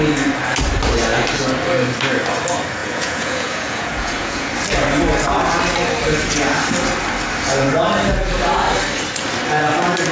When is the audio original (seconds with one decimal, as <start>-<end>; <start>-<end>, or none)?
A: 0.0-2.8; 4.5-10.1